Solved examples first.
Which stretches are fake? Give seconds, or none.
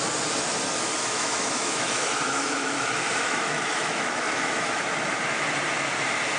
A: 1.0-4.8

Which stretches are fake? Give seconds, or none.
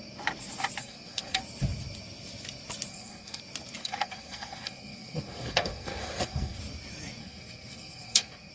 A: 0.8-1.4; 2.9-3.4; 3.8-6.6; 7.2-8.5